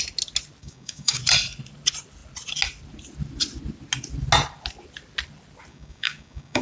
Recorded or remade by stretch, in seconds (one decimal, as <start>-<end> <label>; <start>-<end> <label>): 0.0-0.6 recorded; 0.6-1.2 remade; 1.2-5.7 recorded; 5.7-6.6 remade